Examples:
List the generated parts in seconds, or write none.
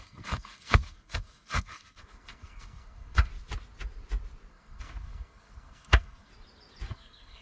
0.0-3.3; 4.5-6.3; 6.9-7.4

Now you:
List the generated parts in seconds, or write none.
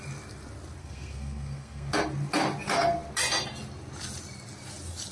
0.8-1.9